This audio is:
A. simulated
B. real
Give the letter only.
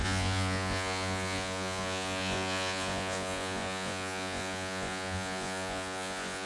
A